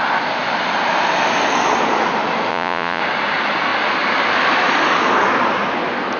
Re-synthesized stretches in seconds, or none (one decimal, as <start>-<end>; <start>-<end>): 2.5-3.0